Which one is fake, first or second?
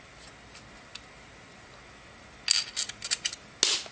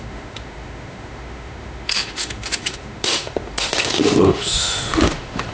second